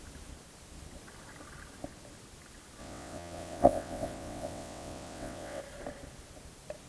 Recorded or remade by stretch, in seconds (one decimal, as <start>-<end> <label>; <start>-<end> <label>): 0.0-2.8 recorded; 2.8-5.6 remade; 5.6-6.9 recorded